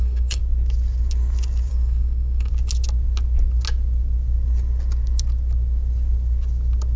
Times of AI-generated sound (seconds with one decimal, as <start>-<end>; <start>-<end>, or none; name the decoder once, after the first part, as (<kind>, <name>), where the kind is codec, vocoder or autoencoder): 0.0-0.4 (codec, SNAC); 1.7-2.5